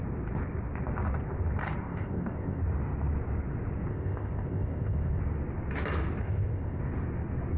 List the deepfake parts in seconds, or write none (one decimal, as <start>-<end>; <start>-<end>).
1.8-2.6; 3.9-5.2; 6.2-6.8